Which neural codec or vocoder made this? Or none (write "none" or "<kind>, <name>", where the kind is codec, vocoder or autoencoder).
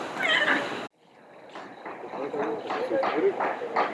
none